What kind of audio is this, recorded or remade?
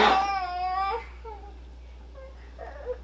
recorded